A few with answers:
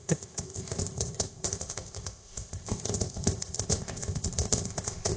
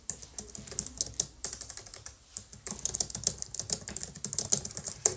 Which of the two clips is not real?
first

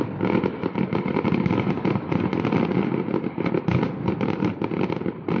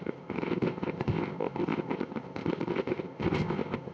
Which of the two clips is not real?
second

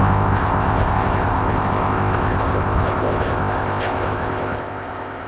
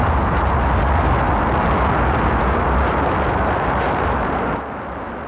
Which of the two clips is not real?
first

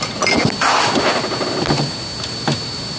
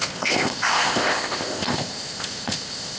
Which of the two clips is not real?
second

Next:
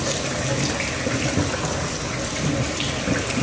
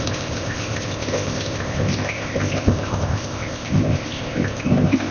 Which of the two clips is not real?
second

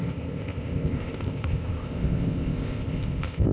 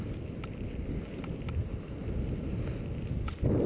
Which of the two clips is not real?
first